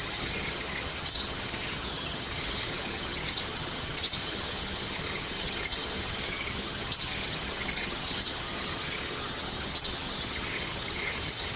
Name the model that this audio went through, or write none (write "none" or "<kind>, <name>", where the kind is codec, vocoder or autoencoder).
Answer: vocoder, HiFi-GAN